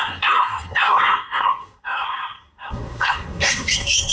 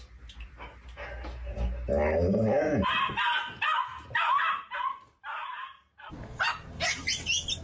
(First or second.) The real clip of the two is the second